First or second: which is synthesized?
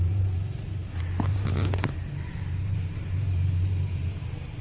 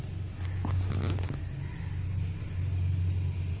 first